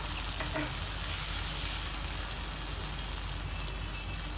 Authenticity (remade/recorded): recorded